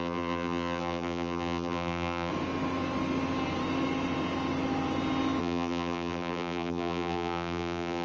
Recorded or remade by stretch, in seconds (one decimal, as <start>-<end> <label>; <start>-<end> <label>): 0.0-2.3 remade; 2.3-5.4 recorded; 5.4-8.0 remade